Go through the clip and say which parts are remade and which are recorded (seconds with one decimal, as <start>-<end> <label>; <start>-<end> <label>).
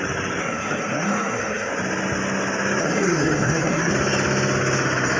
0.0-0.4 recorded; 0.4-1.7 remade; 1.7-2.8 recorded; 2.8-3.9 remade; 3.9-5.2 recorded